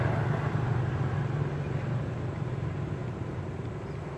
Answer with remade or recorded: recorded